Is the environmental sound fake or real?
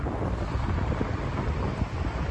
real